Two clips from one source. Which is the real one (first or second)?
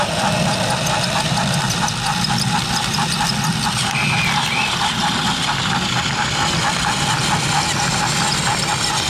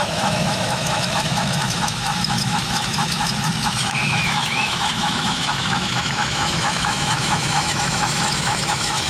first